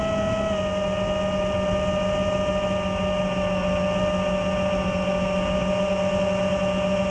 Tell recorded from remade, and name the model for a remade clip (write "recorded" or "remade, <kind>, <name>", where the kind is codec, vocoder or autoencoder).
recorded